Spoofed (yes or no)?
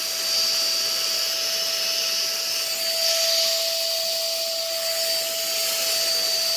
no